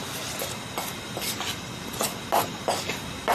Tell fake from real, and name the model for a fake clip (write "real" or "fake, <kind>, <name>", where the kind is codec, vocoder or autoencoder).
real